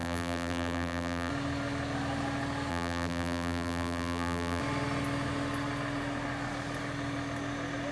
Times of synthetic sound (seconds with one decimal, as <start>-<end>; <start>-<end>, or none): 0.0-1.3; 2.7-4.6